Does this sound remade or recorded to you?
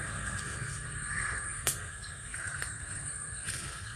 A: remade